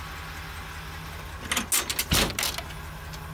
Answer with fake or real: real